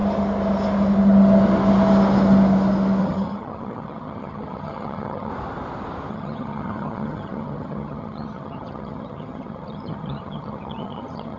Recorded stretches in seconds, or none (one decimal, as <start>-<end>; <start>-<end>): 0.0-3.0; 5.3-6.1